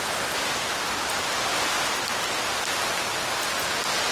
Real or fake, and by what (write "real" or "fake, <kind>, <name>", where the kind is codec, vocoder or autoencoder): real